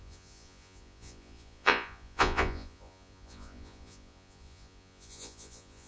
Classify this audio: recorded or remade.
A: remade